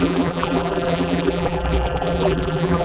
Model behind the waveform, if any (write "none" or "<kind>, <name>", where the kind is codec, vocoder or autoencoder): vocoder, BigVGAN v2